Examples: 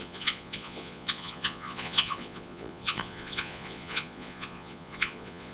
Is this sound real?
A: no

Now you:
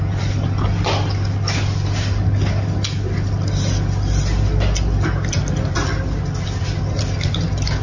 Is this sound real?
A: yes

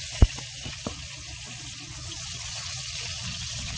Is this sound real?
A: no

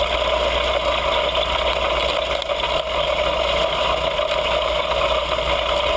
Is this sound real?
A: yes